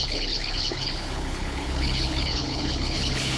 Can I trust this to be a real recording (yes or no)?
no